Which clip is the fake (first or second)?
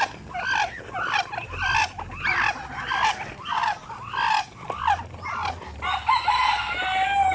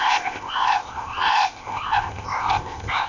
second